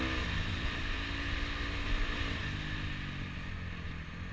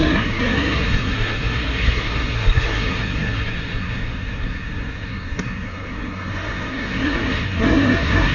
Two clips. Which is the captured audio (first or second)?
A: first